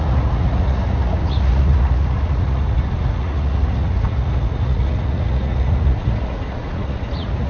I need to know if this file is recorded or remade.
remade